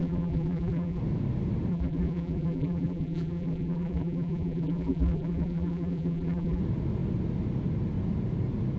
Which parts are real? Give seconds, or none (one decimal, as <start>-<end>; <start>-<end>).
1.0-1.7; 6.6-8.8